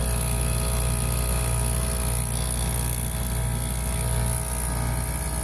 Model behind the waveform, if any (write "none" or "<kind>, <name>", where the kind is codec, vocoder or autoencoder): none